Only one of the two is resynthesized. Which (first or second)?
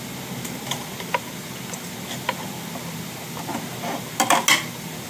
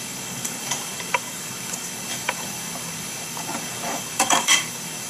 second